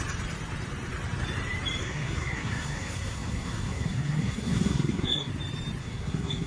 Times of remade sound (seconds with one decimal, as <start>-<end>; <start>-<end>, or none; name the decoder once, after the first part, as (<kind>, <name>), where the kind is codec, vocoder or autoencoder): 1.8-5.3 (codec, SNAC); 5.8-6.5